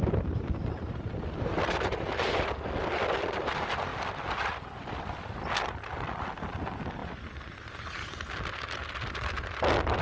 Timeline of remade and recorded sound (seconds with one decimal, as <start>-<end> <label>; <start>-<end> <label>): 0.0-7.0 recorded; 7.0-7.7 remade; 7.7-8.8 recorded; 8.8-10.0 remade